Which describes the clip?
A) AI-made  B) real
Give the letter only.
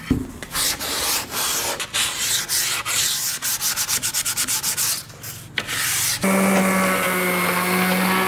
B